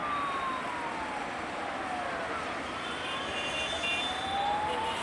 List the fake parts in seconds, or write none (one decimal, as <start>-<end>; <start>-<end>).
none